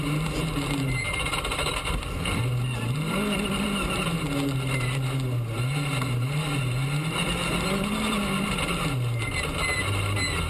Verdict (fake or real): real